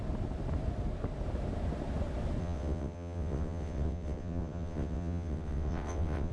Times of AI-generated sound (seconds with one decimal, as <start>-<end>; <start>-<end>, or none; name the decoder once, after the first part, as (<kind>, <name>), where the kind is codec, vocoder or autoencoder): 2.4-6.3 (vocoder, WaveNeXt)